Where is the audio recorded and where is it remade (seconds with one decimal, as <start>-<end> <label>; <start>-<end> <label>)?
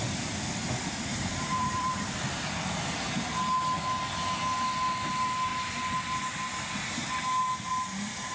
0.0-1.1 recorded; 1.1-3.1 remade; 3.1-8.3 recorded